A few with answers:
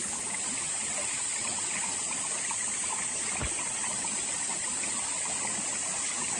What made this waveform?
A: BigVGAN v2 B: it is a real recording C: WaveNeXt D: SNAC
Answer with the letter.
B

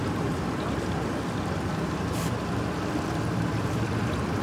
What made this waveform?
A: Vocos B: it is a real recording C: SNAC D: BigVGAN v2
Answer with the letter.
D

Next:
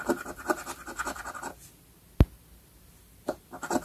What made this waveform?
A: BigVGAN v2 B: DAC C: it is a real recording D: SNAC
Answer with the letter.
C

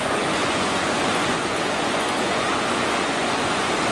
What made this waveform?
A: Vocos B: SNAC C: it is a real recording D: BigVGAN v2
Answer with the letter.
A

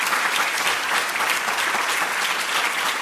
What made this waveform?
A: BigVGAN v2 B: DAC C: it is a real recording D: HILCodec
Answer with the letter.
C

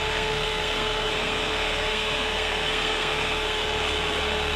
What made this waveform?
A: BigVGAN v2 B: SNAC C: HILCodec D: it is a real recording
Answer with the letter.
B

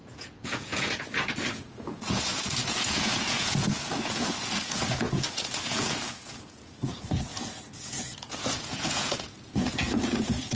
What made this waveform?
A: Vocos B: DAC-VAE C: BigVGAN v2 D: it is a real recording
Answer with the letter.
A